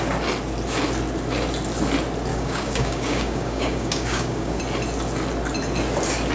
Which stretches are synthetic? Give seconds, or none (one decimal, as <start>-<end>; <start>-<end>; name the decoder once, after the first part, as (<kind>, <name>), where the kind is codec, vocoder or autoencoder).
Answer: 2.3-4.6 (codec, DAC)